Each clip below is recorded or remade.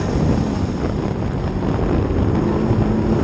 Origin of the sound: recorded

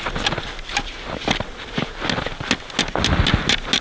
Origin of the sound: recorded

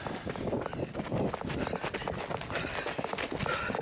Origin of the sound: recorded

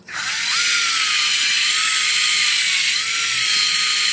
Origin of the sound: recorded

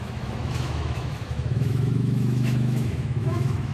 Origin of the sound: remade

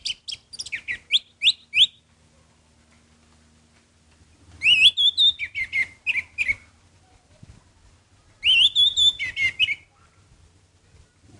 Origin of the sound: recorded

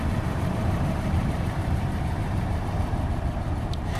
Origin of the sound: remade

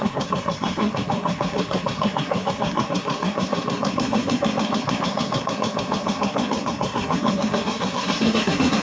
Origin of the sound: remade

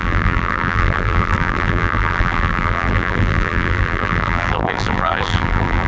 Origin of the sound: remade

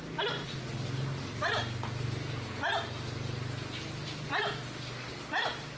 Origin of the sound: recorded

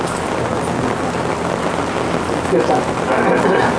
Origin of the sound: recorded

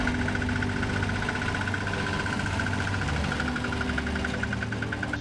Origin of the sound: recorded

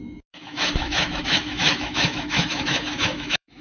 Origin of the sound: remade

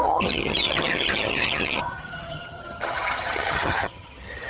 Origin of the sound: remade